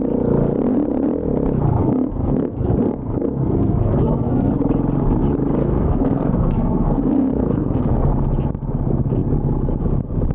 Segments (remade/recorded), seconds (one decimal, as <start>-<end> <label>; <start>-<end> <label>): 0.0-1.8 recorded; 1.8-4.5 remade; 4.5-5.6 recorded; 5.6-8.1 remade; 8.1-10.3 recorded